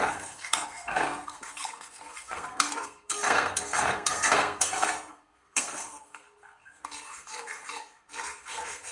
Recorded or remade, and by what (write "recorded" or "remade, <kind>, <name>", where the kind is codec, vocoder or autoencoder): remade, codec, SNAC